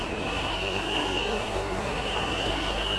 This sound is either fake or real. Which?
fake